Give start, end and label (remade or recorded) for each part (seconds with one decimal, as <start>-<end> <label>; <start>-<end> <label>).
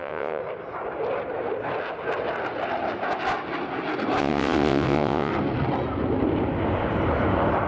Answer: 0.0-0.4 remade; 0.4-4.2 recorded; 4.2-5.3 remade; 5.3-7.7 recorded